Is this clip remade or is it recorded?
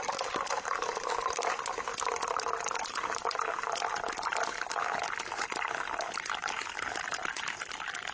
recorded